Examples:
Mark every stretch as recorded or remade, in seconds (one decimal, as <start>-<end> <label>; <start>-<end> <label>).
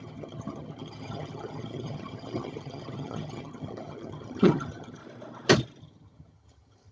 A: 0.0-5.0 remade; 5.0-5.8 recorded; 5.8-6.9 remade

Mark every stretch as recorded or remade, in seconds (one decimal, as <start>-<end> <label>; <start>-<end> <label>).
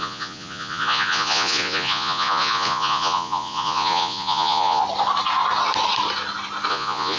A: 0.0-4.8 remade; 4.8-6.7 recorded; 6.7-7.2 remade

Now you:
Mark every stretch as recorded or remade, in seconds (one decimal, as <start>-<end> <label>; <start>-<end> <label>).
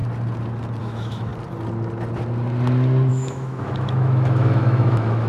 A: 0.0-0.8 recorded; 0.8-1.3 remade; 1.3-3.1 recorded; 3.1-5.3 remade